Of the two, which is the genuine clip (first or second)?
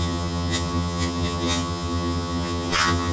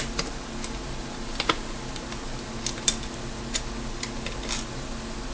second